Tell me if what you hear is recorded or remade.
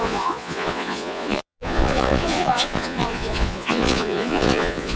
remade